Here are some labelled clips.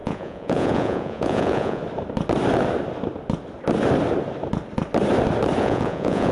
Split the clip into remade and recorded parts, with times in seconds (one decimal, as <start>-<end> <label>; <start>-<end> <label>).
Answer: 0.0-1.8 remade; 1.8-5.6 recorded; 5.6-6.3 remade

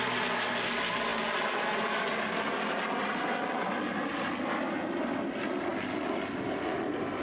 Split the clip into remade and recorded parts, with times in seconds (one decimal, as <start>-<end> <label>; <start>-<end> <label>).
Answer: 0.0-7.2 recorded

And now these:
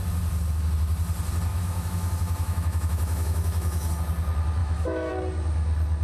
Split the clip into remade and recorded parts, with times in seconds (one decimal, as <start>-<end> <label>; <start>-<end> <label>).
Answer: 0.0-1.5 recorded; 1.5-3.9 remade; 3.9-4.6 recorded; 4.6-5.1 remade; 5.1-6.0 recorded